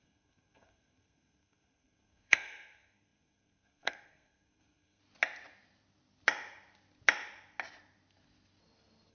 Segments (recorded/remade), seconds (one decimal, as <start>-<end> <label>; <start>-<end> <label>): 0.0-5.0 remade; 5.0-9.1 recorded